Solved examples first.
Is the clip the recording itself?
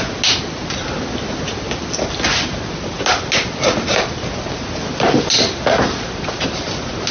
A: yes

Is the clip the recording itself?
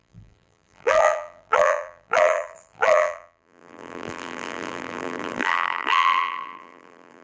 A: no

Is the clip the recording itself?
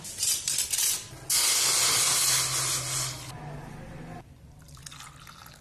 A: yes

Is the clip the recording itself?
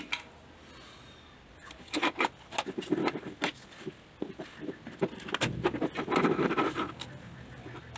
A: yes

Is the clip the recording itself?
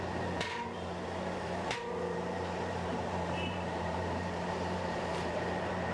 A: no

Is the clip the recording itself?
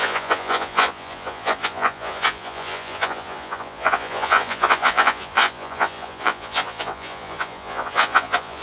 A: no